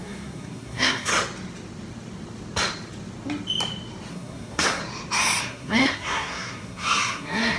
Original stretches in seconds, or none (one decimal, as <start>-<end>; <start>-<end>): 1.1-4.1; 4.8-5.4